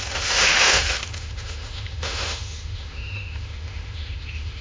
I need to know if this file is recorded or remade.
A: remade